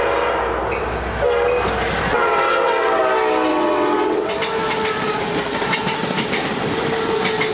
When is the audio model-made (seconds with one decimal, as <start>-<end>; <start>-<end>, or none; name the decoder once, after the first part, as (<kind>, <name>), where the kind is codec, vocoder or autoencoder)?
2.1-3.0 (vocoder, WaveNeXt); 3.5-4.3